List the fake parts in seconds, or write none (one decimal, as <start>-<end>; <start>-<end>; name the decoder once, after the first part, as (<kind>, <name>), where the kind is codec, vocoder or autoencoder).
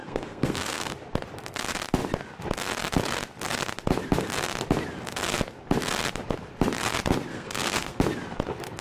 0.0-0.9 (codec, SNAC); 7.3-8.0